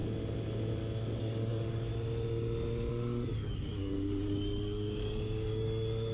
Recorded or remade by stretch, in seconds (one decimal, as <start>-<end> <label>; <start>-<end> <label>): 0.0-1.2 recorded; 1.2-1.9 remade; 1.9-2.9 recorded; 2.9-6.1 remade